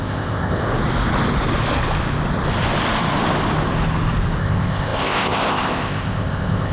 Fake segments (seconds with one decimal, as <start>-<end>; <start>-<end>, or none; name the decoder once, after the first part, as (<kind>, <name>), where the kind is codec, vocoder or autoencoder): 0.0-0.7 (codec, ZipCodec); 4.4-6.7